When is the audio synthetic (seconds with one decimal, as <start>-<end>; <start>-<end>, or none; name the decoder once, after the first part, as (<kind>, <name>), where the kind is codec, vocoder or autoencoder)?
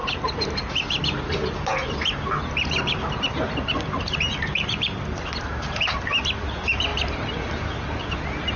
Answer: 0.0-8.6 (vocoder, BigVGAN v2)